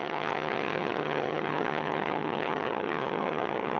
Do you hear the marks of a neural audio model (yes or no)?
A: yes